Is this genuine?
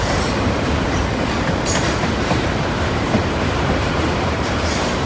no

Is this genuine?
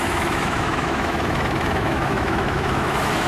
no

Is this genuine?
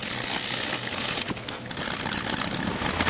yes